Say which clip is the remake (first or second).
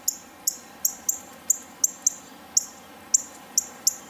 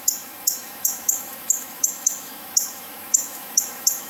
second